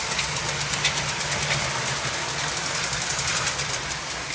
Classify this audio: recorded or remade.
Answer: recorded